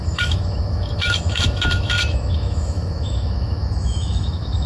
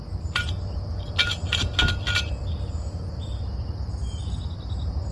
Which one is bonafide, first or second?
second